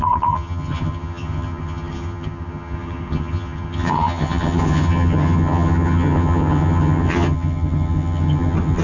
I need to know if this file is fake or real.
fake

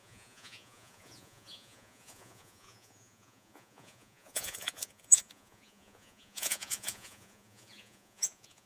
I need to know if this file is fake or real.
fake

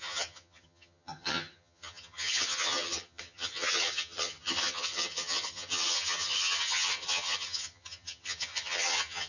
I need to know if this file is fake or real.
fake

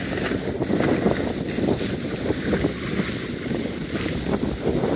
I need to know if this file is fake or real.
real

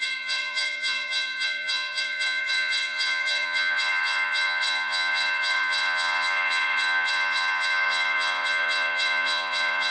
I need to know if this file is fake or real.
fake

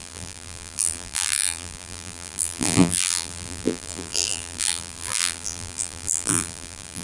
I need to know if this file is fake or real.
fake